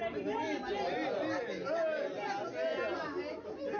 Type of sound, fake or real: real